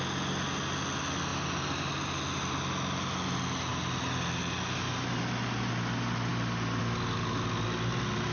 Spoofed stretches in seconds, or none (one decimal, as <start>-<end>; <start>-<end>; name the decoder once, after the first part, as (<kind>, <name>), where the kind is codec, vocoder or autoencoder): 1.3-1.9 (vocoder, BigVGAN v2)